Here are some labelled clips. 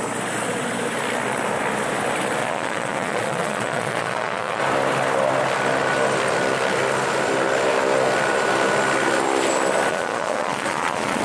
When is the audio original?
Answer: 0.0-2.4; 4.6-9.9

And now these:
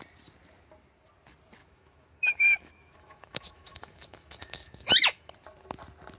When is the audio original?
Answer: 0.0-1.6; 5.3-6.2